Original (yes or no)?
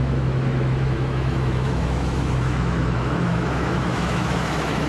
no